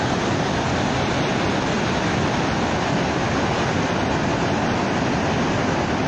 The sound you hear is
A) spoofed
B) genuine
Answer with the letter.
B